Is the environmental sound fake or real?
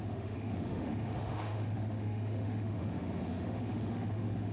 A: fake